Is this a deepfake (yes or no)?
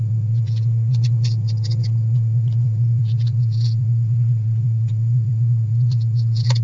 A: yes